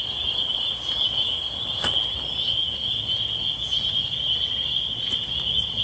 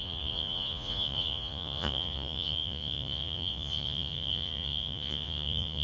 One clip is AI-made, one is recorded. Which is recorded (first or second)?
first